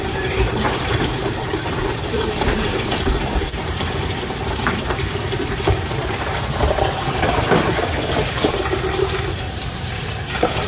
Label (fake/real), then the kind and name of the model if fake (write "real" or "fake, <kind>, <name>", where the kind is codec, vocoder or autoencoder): fake, vocoder, BigVGAN v2